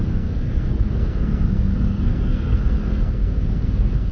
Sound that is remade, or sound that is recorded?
remade